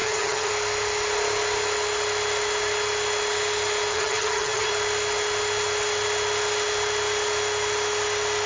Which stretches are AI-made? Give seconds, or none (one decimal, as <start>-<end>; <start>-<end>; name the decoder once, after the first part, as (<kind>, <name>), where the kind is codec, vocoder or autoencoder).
0.0-0.5 (vocoder, HiFi-GAN); 3.9-4.7